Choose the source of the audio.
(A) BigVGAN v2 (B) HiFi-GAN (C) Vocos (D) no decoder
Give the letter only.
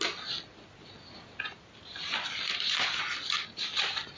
D